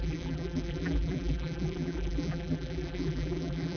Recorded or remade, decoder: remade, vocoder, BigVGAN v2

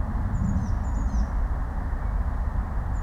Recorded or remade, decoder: recorded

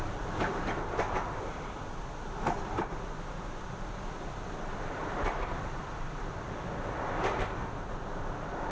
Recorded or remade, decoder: remade, vocoder, BigVGAN v2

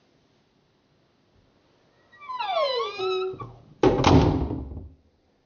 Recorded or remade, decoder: recorded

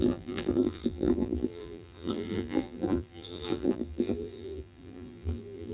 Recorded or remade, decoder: remade, vocoder, BigVGAN v2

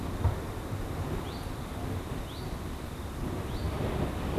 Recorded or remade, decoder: recorded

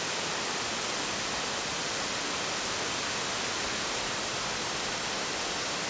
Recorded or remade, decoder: recorded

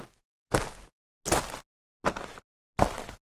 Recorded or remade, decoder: recorded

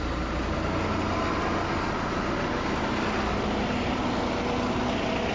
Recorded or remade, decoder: recorded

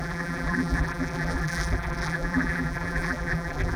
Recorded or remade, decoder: remade, vocoder, BigVGAN v2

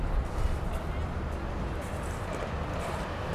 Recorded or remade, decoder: recorded